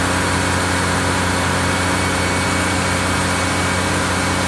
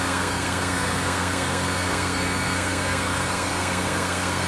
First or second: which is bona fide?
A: first